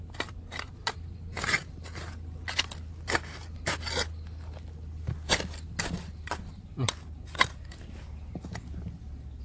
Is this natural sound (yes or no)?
yes